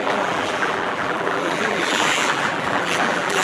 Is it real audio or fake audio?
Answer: fake